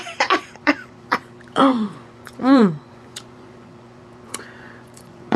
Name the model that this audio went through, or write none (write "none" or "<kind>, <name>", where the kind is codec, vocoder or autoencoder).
vocoder, Vocos